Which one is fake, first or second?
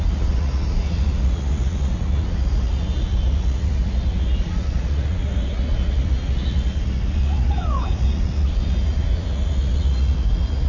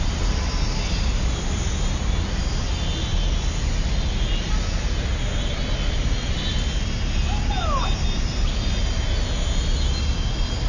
first